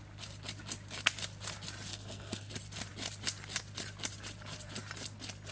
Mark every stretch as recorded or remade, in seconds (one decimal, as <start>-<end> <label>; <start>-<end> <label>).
0.0-1.9 recorded; 1.9-2.5 remade; 2.5-5.5 recorded